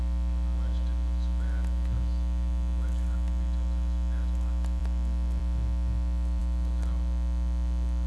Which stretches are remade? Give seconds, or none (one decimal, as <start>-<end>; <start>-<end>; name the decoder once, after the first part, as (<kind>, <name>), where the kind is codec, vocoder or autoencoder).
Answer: none